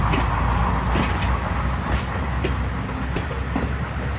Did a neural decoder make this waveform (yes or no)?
no